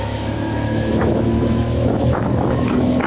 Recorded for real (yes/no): no